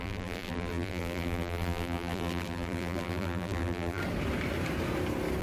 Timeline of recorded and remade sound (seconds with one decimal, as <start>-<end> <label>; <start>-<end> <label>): 0.0-4.0 remade; 4.0-5.4 recorded

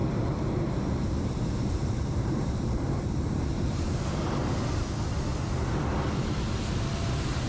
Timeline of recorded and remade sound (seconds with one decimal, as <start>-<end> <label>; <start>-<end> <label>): 0.0-4.5 remade; 4.5-7.5 recorded

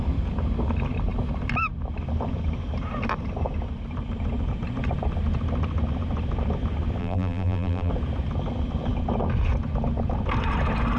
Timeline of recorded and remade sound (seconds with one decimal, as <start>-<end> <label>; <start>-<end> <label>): 0.0-7.0 recorded; 7.0-7.9 remade; 7.9-11.0 recorded

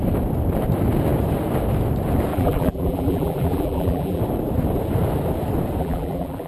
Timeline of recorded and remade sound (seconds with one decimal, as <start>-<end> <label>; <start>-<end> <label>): 0.0-2.3 recorded; 2.3-4.2 remade; 4.2-5.8 recorded; 5.8-6.5 remade